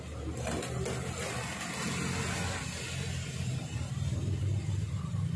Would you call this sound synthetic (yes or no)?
no